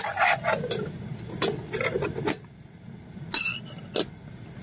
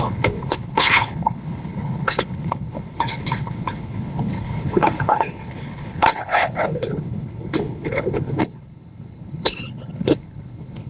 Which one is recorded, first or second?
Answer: first